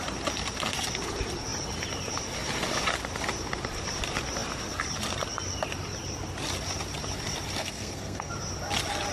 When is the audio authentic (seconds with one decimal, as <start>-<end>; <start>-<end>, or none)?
0.0-7.6; 8.3-9.1